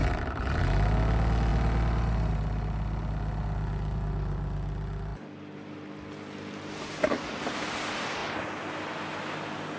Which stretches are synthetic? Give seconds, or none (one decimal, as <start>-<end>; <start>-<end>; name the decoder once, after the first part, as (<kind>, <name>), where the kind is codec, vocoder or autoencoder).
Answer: 0.0-0.6 (vocoder, BigVGAN v2)